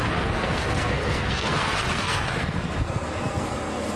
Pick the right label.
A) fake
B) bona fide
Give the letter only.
A